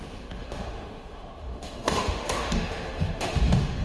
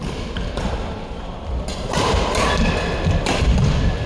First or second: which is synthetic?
first